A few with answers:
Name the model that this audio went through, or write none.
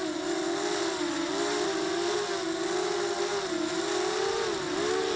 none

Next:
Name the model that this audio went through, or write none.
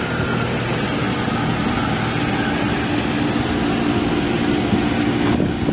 none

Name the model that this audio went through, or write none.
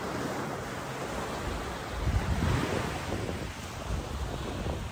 none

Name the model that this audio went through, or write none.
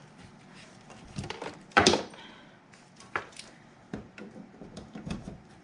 vocoder, BigVGAN v2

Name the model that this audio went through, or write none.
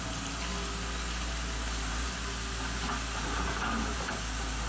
none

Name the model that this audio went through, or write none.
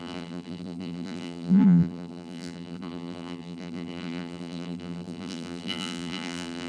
vocoder, BigVGAN v2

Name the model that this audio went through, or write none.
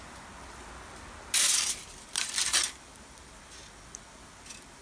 none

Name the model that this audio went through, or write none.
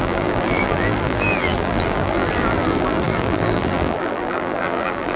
vocoder, BigVGAN v2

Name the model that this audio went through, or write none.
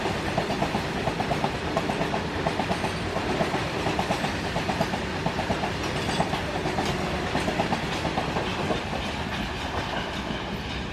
none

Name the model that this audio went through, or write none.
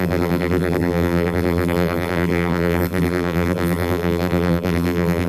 vocoder, BigVGAN v2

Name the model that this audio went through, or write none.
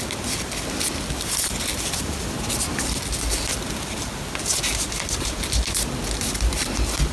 none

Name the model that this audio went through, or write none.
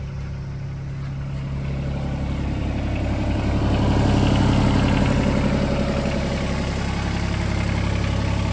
none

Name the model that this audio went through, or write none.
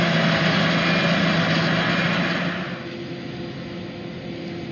none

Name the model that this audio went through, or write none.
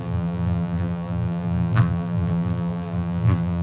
vocoder, BigVGAN v2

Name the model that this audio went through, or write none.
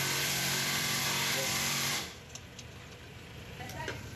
vocoder, BigVGAN v2